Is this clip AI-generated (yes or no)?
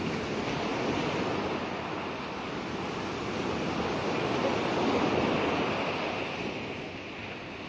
no